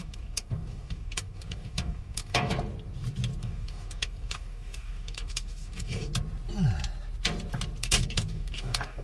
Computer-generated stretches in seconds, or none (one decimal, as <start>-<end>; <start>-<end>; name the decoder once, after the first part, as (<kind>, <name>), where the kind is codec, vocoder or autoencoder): 0.0-2.5 (codec, DAC); 3.4-6.1; 7.8-9.0